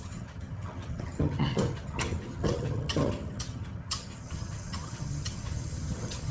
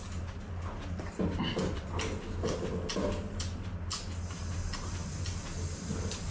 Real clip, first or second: second